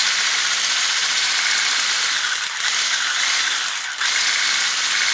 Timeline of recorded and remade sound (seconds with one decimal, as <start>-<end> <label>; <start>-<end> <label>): 0.0-5.1 recorded